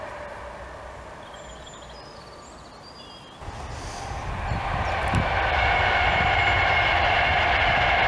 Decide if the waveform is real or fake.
real